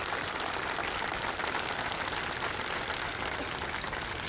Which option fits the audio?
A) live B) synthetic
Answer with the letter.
A